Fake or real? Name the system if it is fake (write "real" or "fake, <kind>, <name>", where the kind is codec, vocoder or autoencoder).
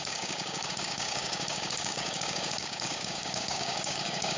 fake, codec, DAC